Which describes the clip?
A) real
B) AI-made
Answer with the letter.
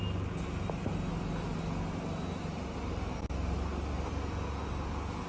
A